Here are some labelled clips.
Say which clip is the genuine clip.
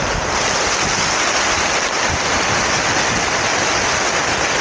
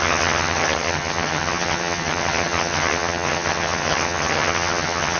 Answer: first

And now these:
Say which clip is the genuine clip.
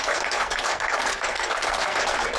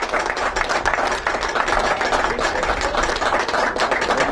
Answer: second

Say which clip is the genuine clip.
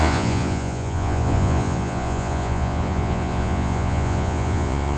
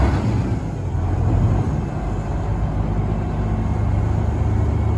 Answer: second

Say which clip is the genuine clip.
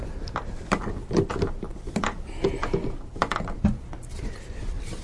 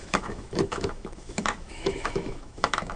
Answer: first